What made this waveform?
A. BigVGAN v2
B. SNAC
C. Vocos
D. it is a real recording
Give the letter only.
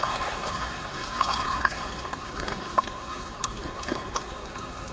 B